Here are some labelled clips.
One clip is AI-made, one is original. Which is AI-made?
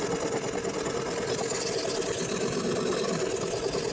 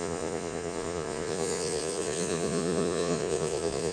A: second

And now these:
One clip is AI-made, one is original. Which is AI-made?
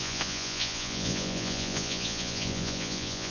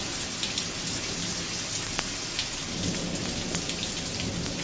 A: first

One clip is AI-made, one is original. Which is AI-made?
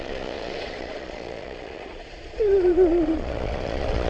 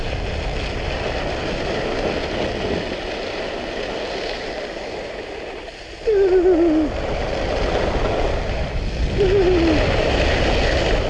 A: first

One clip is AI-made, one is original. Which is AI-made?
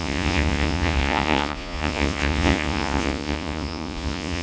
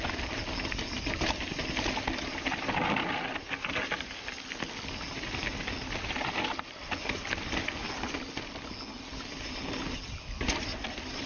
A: first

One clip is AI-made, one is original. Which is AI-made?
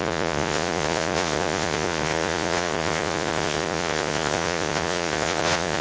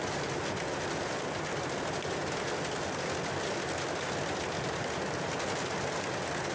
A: first